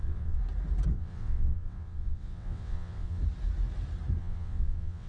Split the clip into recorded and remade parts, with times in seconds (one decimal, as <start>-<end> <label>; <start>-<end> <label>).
0.0-0.4 remade; 0.4-0.9 recorded; 0.9-3.2 remade; 3.2-4.2 recorded; 4.2-5.1 remade